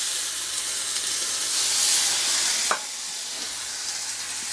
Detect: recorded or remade recorded